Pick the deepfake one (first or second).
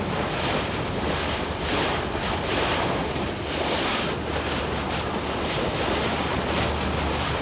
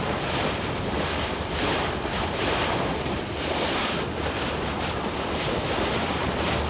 second